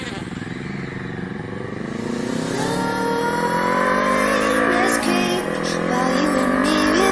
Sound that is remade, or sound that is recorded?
recorded